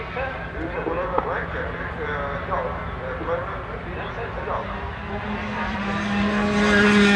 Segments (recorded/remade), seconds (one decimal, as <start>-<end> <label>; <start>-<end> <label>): 0.0-7.2 recorded